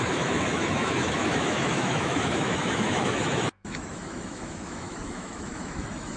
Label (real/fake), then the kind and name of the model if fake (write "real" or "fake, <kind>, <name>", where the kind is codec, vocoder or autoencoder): fake, autoencoder, DAC-VAE